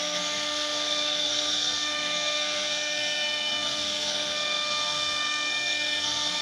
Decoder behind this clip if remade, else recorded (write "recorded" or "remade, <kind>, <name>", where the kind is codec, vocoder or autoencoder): remade, codec, SNAC